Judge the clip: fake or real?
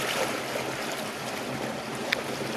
real